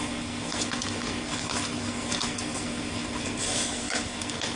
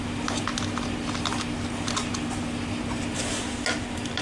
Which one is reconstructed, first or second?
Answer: first